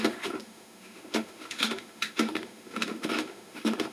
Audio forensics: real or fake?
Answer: fake